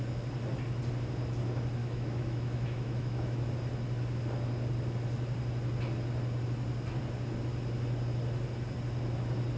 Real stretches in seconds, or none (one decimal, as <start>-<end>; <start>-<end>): 0.0-1.8; 3.5-9.6